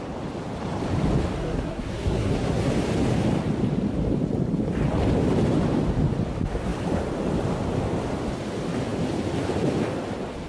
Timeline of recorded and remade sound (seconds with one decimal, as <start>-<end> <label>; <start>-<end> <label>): 0.0-1.4 recorded; 1.4-2.7 remade; 2.7-10.5 recorded